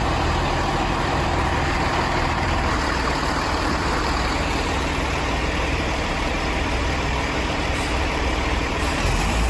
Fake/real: fake